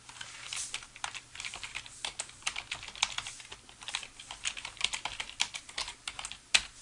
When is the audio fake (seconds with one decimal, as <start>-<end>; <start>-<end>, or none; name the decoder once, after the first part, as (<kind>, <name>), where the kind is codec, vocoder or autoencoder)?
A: none